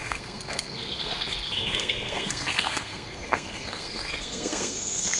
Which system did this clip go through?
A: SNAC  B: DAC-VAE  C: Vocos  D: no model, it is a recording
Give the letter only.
A